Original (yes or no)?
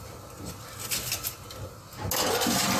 yes